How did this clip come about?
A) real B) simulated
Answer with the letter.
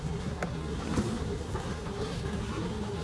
B